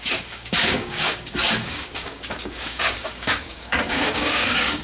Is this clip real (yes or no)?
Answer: no